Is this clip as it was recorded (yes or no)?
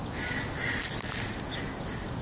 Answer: yes